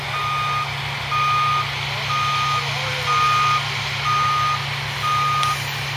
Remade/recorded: recorded